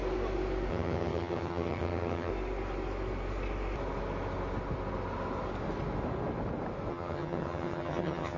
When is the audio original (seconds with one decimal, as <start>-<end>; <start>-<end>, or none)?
0.0-0.7; 2.3-6.9